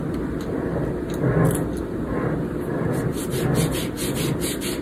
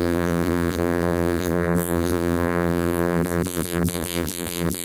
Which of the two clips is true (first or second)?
first